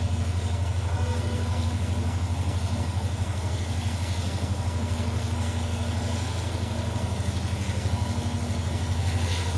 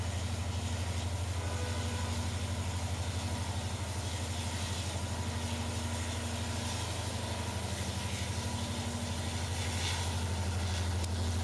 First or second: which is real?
second